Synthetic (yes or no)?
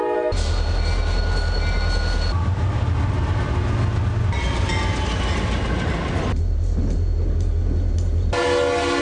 no